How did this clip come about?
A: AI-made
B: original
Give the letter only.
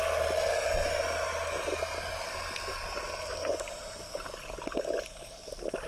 B